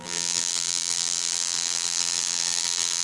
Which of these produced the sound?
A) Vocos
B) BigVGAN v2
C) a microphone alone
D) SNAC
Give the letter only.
B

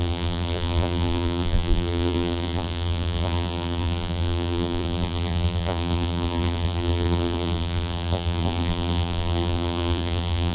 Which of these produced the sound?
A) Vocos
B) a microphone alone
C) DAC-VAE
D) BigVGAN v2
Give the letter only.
D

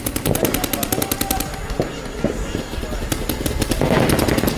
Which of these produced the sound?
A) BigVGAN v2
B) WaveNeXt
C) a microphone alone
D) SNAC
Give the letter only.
C